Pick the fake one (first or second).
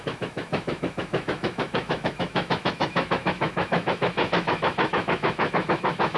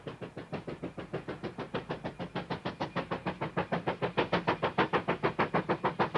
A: first